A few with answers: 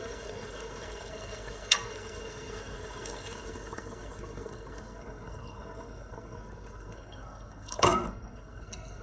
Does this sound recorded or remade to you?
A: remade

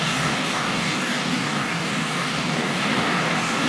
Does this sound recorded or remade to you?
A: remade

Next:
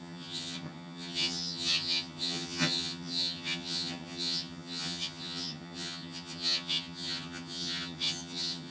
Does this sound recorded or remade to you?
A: remade